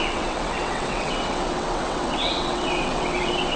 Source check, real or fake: fake